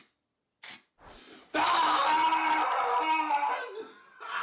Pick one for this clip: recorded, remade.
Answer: recorded